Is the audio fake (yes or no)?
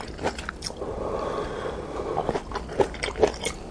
no